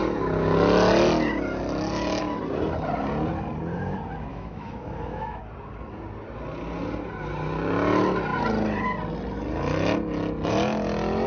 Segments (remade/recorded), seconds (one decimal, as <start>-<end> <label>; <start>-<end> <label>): 0.0-4.3 recorded; 4.3-5.4 remade; 5.4-11.3 recorded